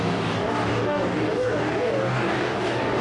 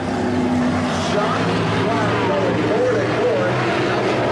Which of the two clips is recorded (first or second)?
second